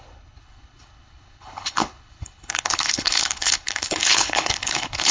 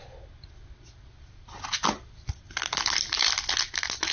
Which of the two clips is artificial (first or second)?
first